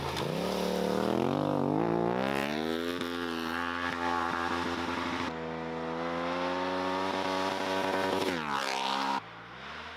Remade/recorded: recorded